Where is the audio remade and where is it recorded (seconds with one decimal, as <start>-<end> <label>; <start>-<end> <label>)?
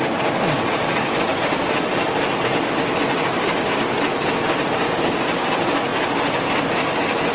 0.0-1.3 recorded; 1.3-4.6 remade; 4.6-5.9 recorded; 5.9-6.7 remade; 6.7-7.3 recorded